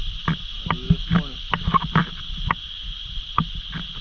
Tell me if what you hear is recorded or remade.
recorded